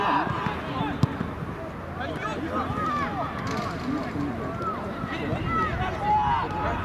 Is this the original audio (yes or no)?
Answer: yes